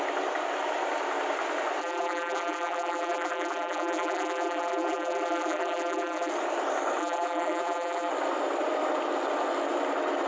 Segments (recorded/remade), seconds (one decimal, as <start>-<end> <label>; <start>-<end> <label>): 0.0-1.8 recorded; 1.8-6.3 remade; 6.3-7.0 recorded; 7.0-8.1 remade; 8.1-10.3 recorded